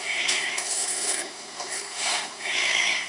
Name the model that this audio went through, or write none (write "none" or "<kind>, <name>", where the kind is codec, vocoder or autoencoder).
codec, SNAC